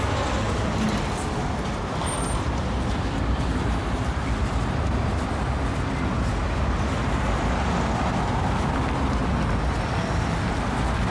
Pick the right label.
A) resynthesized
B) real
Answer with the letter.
B